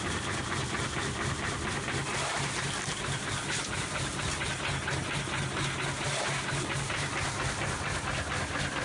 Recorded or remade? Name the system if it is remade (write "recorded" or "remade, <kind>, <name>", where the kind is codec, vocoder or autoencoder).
recorded